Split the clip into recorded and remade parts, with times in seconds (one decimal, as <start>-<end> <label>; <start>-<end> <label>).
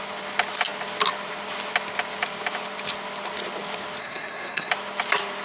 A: 0.0-4.0 recorded; 4.0-4.7 remade; 4.7-5.4 recorded